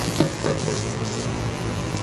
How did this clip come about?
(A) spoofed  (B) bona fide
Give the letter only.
A